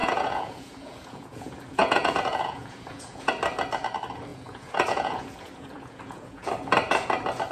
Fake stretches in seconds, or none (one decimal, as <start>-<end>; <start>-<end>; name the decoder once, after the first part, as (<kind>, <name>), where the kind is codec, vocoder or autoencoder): 0.0-3.3 (vocoder, Vocos); 4.3-6.5